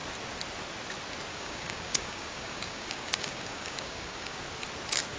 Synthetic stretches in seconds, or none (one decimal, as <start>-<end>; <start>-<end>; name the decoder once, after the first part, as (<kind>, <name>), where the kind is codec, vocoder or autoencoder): 1.3-4.4 (codec, DAC)